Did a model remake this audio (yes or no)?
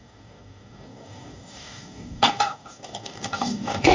yes